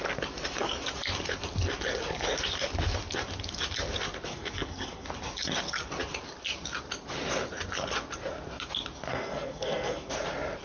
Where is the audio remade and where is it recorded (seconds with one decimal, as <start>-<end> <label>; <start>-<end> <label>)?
0.0-4.3 recorded; 4.3-5.1 remade; 5.1-9.1 recorded; 9.1-10.1 remade; 10.1-10.6 recorded

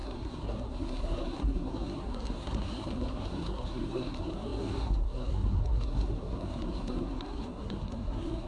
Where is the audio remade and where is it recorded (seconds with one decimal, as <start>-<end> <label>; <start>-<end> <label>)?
0.0-8.5 remade

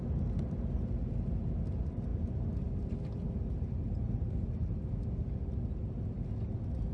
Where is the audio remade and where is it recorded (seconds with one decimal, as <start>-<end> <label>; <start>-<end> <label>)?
0.0-6.9 recorded

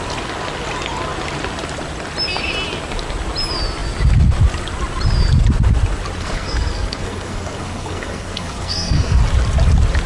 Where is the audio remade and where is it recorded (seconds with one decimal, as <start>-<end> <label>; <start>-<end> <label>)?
0.0-6.2 recorded; 6.2-9.2 remade; 9.2-10.1 recorded

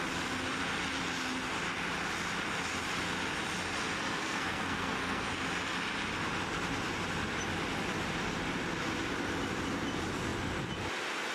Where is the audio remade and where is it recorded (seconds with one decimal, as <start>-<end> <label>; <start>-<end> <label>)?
0.0-4.2 recorded; 4.2-5.3 remade; 5.3-11.3 recorded

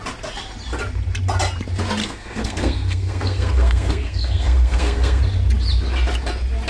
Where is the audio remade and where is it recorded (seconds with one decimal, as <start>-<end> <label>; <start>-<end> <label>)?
0.0-2.0 recorded; 2.0-5.2 remade; 5.2-6.7 recorded

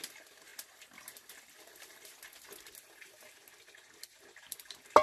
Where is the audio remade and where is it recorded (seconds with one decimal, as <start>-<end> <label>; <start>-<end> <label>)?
0.0-5.0 recorded

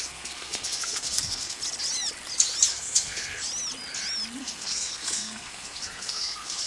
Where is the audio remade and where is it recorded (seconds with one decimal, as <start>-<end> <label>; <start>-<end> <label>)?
0.0-1.6 remade; 1.6-2.7 recorded; 2.7-3.4 remade; 3.4-4.4 recorded; 4.4-6.7 remade